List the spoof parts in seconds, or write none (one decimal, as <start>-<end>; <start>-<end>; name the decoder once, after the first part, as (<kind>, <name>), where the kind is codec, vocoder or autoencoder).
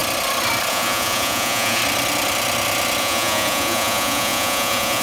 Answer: 0.7-1.8 (vocoder, Vocos); 3.0-5.0